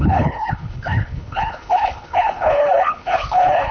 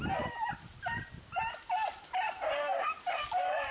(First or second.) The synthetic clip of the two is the first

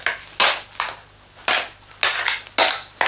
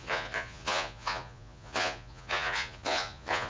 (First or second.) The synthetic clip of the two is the second